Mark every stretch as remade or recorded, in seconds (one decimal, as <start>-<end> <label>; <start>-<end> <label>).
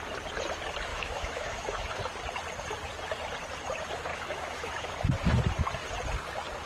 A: 0.0-0.9 recorded; 0.9-2.0 remade; 2.0-4.1 recorded; 4.1-4.9 remade; 4.9-6.7 recorded